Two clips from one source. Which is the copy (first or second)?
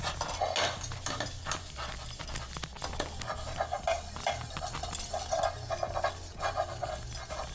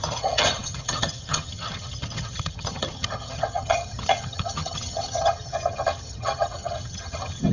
second